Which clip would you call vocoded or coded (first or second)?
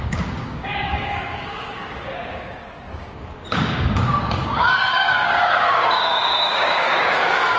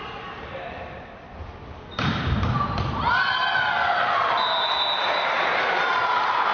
first